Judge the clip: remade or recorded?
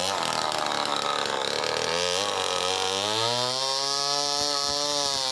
recorded